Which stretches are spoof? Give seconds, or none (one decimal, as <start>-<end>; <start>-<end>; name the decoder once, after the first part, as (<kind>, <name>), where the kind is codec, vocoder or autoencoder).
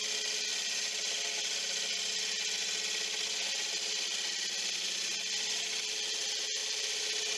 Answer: none